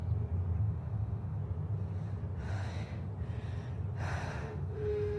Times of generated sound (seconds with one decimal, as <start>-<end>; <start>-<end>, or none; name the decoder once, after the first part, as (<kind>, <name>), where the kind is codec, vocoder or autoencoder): 0.6-1.4 (autoencoder, DAC-VAE); 2.5-3.1; 4.3-5.2